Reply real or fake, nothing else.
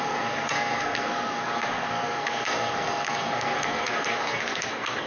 fake